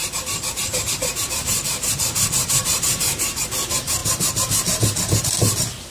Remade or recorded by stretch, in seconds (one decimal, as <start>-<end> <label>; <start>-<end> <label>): 0.0-3.5 remade; 3.5-5.9 recorded